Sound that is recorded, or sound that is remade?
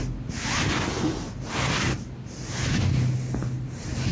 recorded